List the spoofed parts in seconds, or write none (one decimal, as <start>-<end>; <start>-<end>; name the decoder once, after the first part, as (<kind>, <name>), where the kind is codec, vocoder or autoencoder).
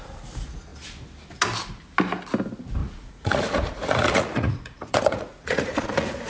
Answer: 2.8-6.3 (vocoder, Vocos)